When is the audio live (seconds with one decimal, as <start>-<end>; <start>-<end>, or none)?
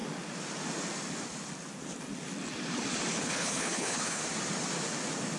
0.0-3.2; 4.2-5.4